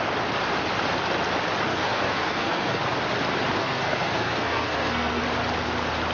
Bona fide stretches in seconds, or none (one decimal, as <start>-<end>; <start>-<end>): 0.0-1.7; 2.8-3.6; 5.2-6.1